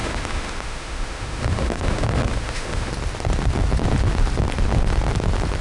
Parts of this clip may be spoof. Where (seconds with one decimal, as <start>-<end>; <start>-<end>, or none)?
0.0-2.9